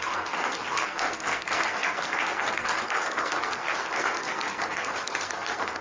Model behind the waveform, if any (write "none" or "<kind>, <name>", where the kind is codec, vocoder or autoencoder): codec, SNAC